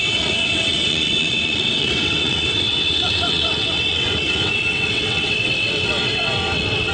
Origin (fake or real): fake